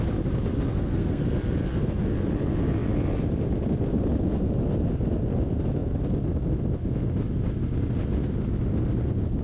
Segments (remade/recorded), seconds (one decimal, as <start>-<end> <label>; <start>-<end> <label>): 0.0-0.7 recorded; 0.7-1.2 remade; 1.2-9.4 recorded